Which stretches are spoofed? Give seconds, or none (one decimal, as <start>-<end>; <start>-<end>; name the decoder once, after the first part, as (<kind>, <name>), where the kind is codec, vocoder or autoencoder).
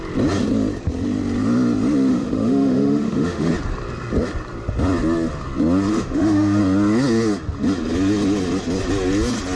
2.1-3.5 (autoencoder, DAC-VAE); 5.9-6.6